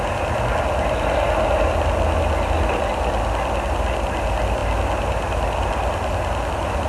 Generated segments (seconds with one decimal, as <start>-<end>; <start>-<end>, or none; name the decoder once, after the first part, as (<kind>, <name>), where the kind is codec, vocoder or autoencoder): none